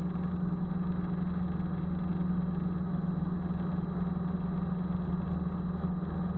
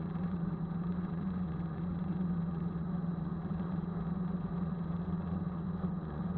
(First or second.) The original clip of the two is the first